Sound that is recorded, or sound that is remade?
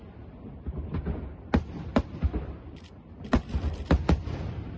recorded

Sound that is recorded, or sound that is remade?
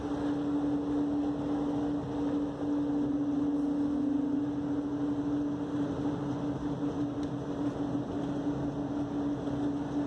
recorded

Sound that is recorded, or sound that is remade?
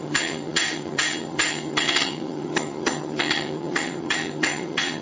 remade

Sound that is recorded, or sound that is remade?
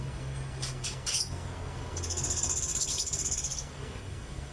remade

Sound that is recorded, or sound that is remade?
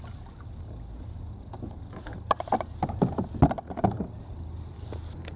recorded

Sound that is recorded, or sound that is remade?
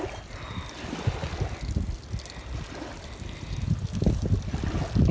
recorded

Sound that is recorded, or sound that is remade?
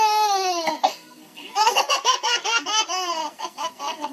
remade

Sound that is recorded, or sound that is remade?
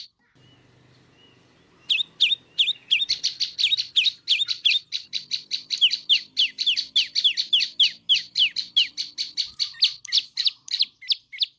recorded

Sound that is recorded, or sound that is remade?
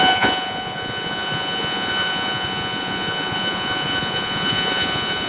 remade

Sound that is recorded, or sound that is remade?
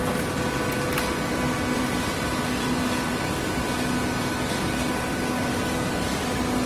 recorded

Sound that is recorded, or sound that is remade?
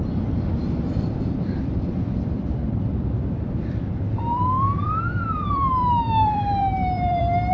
remade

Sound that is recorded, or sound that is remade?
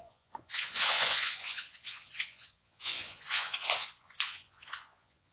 remade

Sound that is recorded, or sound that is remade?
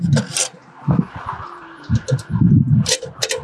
recorded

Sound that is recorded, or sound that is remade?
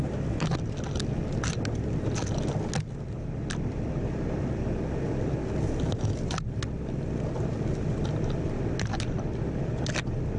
recorded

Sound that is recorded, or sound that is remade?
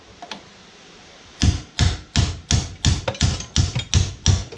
recorded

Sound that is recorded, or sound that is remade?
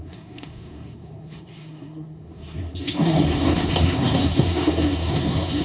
remade